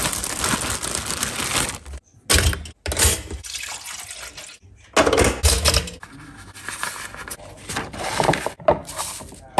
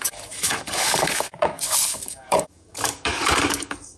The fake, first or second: second